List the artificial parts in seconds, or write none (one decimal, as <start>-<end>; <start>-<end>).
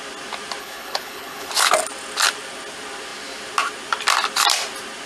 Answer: 0.6-1.5